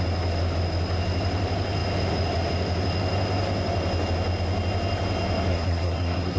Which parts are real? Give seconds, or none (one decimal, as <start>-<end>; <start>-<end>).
0.0-5.5